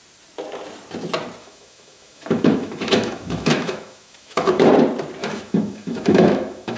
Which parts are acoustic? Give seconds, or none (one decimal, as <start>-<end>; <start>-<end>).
0.0-1.4; 4.7-5.2